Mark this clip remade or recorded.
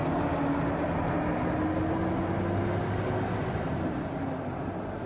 recorded